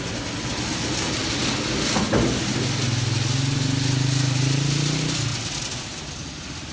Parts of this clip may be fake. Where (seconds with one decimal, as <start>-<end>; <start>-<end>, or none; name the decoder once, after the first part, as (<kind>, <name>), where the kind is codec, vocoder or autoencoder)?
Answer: none